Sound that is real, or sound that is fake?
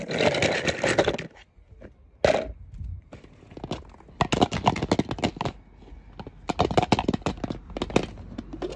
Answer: real